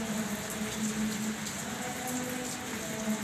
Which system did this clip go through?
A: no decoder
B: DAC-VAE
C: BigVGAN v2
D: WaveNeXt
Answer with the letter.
A